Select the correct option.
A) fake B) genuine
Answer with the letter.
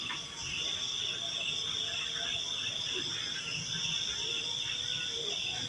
B